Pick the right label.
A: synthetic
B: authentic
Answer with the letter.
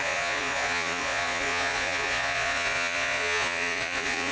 A